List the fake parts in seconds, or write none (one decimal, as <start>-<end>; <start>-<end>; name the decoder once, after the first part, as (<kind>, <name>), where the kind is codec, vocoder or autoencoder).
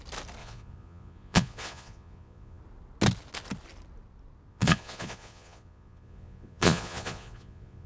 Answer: 0.4-2.6 (vocoder, Vocos); 4.5-7.9